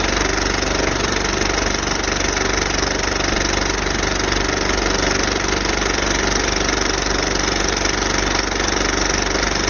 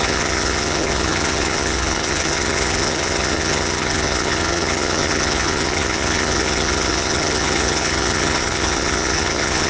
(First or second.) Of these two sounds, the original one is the first